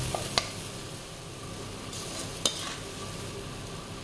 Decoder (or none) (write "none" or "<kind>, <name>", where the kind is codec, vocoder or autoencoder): none